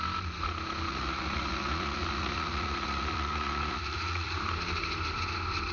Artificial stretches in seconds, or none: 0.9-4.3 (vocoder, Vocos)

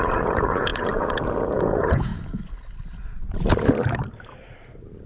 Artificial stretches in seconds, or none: 0.0-2.1 (vocoder, Vocos)

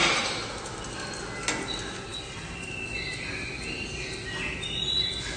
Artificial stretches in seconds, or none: none

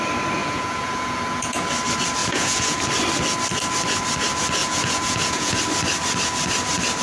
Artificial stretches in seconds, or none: 0.4-1.7 (vocoder, Vocos); 2.2-2.8; 4.6-5.6

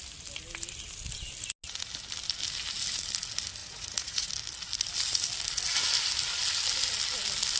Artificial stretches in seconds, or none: 3.6-4.3 (vocoder, Vocos)

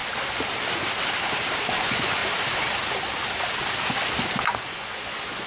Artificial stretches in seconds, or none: 1.8-2.2 (vocoder, Vocos); 4.6-5.5